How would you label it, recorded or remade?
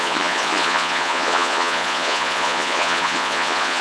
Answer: remade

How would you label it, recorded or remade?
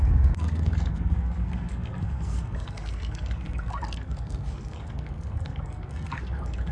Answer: remade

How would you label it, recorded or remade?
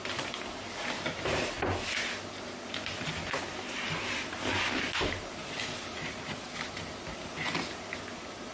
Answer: recorded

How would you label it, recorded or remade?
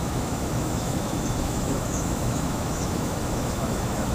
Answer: remade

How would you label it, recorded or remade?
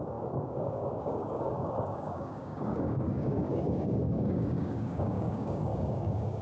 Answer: remade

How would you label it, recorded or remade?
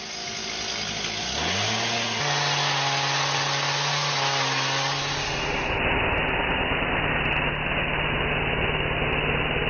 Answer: recorded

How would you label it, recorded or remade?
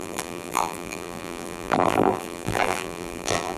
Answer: remade